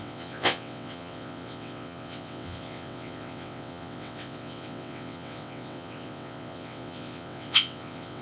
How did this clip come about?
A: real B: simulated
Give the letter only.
B